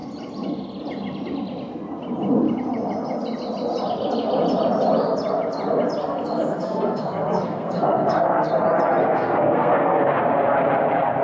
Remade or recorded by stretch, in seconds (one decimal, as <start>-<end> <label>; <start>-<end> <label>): 0.0-6.0 recorded; 6.0-8.5 remade; 8.5-9.0 recorded; 9.0-10.2 remade; 10.2-11.2 recorded